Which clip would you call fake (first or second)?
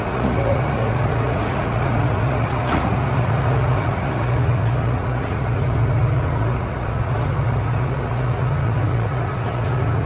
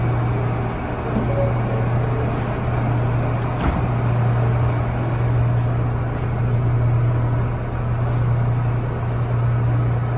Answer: first